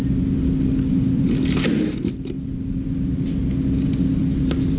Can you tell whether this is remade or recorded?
recorded